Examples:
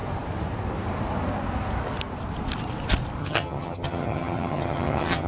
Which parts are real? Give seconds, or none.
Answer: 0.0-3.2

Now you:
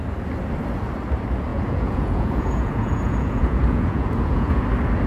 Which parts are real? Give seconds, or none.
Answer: 0.0-1.5; 4.6-5.1

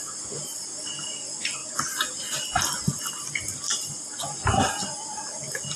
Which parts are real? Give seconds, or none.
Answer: 0.0-5.8

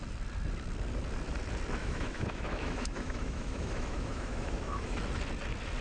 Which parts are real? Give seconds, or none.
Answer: 0.0-1.8; 5.0-5.8

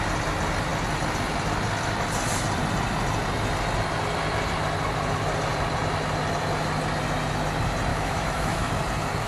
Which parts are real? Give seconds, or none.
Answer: 0.0-7.9; 8.7-9.3